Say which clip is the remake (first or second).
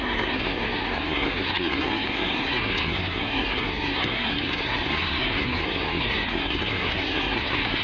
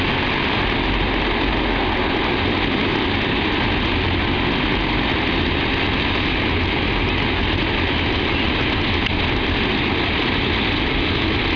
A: first